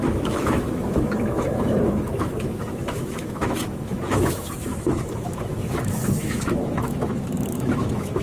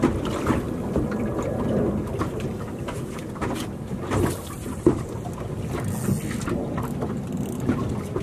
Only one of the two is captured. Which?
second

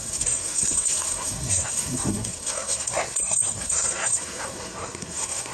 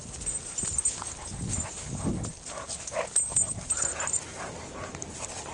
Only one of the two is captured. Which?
second